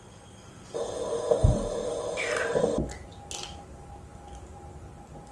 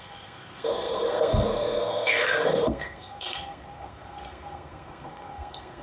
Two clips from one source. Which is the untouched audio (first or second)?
first